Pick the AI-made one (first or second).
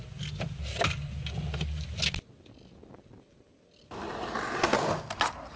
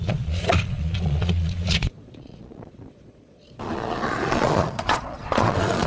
second